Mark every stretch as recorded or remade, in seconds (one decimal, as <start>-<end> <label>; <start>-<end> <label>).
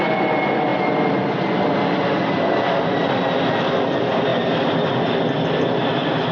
0.0-6.3 recorded